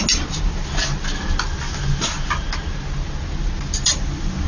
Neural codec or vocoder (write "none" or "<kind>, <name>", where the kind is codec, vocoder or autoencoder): none